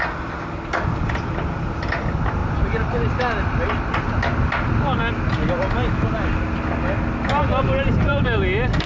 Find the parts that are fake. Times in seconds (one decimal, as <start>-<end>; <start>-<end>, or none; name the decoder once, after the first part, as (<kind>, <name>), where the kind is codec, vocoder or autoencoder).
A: none